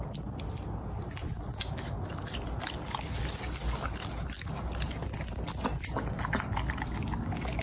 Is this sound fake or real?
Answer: real